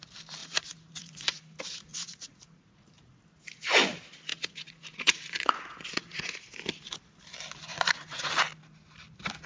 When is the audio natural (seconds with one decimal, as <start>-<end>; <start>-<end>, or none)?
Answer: 0.0-0.4; 1.4-1.9; 3.2-4.3; 6.3-7.7; 8.3-9.5